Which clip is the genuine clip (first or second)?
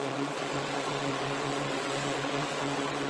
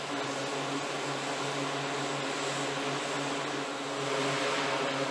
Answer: second